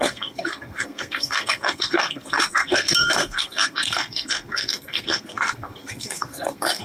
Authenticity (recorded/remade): remade